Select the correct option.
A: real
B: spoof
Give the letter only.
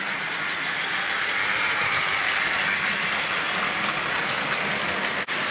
A